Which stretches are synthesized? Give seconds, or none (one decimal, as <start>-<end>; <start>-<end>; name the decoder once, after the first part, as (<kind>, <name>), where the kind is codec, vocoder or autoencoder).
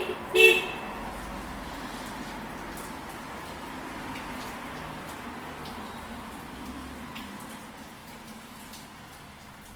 8.0-8.7 (vocoder, BigVGAN v2)